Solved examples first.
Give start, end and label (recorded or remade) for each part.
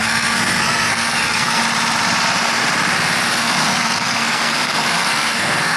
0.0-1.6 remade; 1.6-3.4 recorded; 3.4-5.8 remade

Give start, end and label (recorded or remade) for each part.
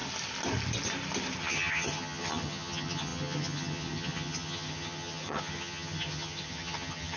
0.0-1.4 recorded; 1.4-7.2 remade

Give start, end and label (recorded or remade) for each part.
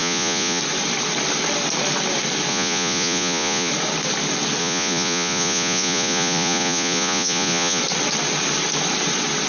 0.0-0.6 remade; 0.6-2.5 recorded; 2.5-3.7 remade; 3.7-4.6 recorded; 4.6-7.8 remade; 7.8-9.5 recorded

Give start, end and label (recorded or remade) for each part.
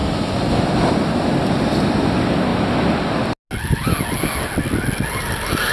0.0-5.7 recorded